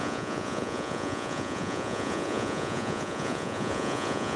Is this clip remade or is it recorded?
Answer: remade